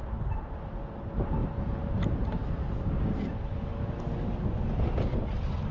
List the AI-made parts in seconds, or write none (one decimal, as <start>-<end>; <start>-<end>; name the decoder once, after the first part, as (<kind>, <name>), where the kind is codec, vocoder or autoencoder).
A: none